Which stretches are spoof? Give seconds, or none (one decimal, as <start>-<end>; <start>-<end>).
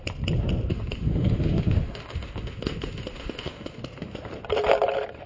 0.7-3.8